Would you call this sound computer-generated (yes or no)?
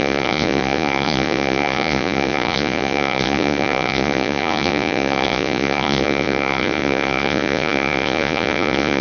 yes